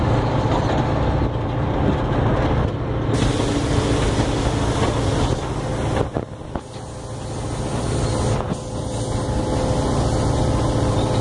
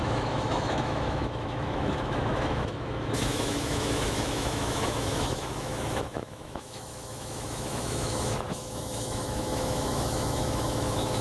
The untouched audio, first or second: first